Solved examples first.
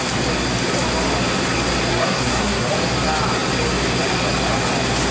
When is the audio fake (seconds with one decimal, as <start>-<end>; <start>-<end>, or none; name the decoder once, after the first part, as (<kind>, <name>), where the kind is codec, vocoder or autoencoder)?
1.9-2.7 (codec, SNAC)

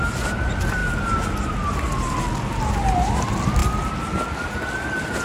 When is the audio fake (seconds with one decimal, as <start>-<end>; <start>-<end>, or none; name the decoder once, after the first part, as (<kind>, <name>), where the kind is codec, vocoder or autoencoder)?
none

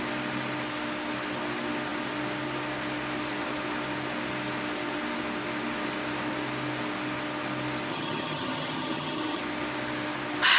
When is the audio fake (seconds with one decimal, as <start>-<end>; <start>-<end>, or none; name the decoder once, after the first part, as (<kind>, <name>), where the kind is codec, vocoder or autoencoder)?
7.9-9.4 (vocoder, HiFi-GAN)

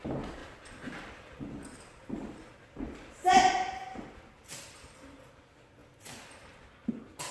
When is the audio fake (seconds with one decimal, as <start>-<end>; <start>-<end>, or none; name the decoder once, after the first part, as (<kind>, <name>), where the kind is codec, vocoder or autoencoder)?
0.4-1.4 (vocoder, BigVGAN v2); 3.8-5.3

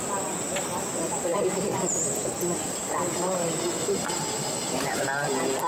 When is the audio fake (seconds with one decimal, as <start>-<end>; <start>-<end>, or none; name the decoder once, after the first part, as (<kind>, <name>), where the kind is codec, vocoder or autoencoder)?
none

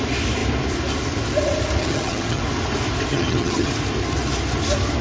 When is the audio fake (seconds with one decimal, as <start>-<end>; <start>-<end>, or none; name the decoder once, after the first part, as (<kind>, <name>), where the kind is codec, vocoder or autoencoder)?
1.8-2.4 (vocoder, HiFi-GAN); 3.1-3.7